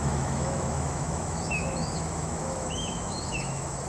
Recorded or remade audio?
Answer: remade